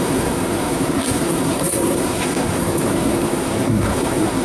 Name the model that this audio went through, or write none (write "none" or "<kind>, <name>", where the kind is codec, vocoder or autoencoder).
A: codec, SNAC